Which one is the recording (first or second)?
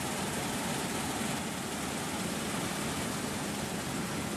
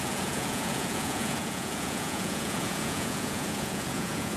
first